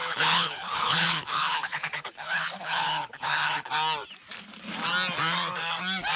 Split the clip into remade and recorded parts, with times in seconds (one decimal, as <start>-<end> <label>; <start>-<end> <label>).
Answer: 0.0-3.7 remade; 3.7-6.2 recorded

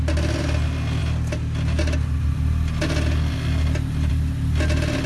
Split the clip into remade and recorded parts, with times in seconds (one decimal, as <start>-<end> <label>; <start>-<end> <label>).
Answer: 0.0-5.1 recorded

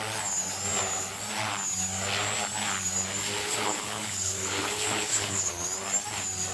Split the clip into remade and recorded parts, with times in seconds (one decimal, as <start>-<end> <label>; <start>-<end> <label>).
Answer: 0.0-3.4 recorded; 3.4-5.5 remade; 5.5-6.5 recorded

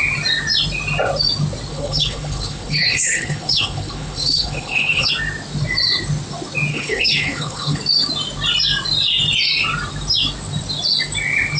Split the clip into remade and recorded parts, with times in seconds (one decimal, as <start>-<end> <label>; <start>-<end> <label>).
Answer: 0.0-1.7 recorded; 1.7-5.1 remade; 5.1-6.7 recorded; 6.7-7.8 remade; 7.8-11.6 recorded

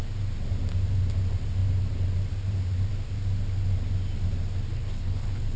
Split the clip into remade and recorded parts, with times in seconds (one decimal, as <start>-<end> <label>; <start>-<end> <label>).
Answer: 0.0-4.7 recorded; 4.7-5.6 remade

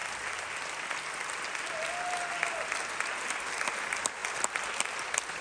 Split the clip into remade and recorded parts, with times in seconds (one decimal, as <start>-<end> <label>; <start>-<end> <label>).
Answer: 0.0-5.4 recorded